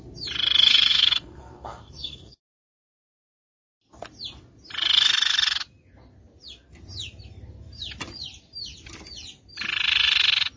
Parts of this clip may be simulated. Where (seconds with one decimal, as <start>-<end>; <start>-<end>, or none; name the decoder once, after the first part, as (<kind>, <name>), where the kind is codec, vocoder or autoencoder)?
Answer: 0.7-2.7 (codec, SNAC)